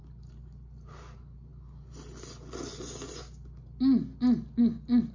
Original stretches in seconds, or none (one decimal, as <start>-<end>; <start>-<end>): 0.0-5.1